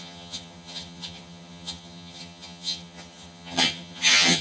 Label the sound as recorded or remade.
remade